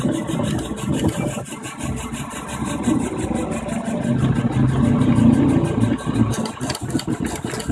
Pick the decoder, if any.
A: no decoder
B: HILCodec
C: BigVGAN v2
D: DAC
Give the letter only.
A